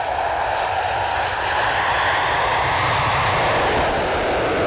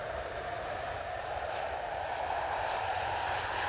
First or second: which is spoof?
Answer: second